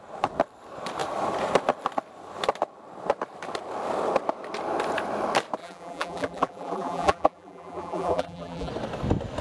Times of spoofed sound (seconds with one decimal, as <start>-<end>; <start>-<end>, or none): 5.6-8.7